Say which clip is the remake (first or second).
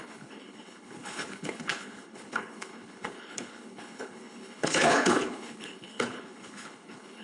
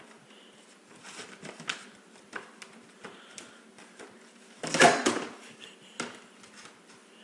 first